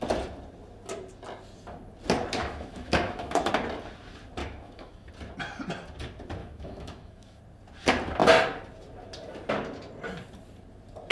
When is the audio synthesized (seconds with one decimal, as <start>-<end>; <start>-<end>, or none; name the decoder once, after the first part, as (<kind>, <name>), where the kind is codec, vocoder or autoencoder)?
2.4-3.5 (autoencoder, DAC-VAE); 4.4-5.1; 6.4-7.4